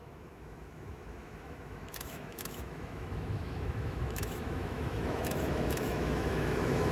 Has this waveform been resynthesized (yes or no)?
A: yes